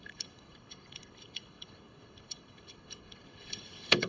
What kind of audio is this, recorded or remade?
remade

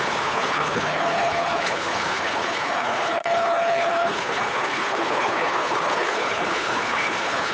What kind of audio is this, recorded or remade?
remade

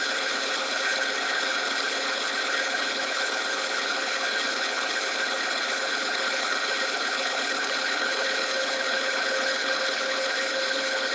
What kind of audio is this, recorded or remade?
remade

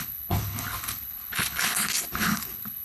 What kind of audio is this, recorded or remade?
remade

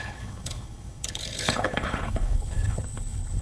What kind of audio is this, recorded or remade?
remade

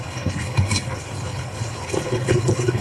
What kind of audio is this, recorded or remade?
remade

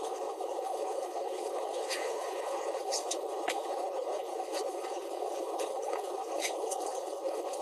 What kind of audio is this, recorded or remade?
remade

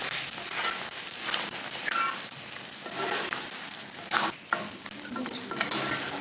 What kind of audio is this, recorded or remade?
recorded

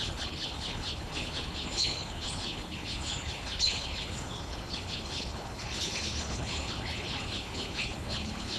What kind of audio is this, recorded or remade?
remade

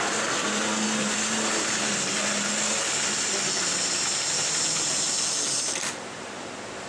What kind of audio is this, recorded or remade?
recorded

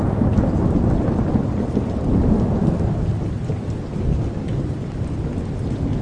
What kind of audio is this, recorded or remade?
recorded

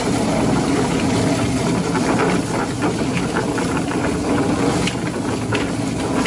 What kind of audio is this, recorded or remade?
recorded